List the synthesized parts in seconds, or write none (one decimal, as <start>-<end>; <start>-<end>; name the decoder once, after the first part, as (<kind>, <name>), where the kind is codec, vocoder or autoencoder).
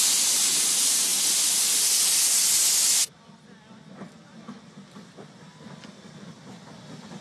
none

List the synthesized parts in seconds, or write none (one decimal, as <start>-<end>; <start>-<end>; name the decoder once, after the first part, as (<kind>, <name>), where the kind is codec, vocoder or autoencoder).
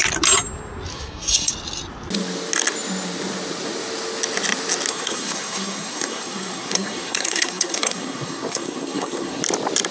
0.9-1.5 (codec, SNAC); 4.9-9.4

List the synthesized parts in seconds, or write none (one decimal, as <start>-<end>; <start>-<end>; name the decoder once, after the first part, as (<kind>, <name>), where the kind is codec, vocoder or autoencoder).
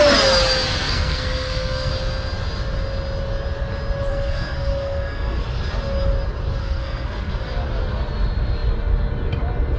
0.8-1.9 (codec, SNAC); 4.1-5.4; 6.6-7.3